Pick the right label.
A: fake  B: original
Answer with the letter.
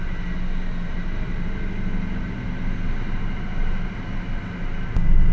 B